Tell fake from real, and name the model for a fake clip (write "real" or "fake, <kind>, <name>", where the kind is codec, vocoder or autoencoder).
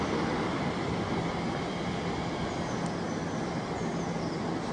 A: real